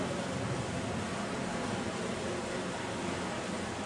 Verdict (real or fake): real